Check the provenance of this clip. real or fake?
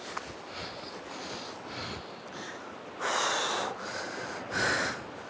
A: real